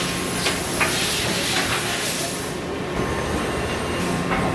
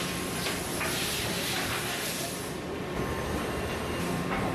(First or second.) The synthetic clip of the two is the second